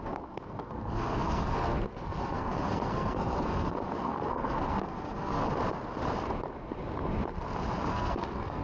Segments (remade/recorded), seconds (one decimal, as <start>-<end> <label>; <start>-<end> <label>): 0.0-5.4 remade; 5.4-7.9 recorded; 7.9-8.6 remade